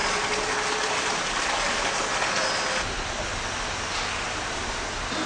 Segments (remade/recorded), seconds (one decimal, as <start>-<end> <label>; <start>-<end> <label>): 0.0-5.3 recorded